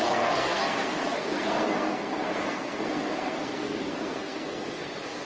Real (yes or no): no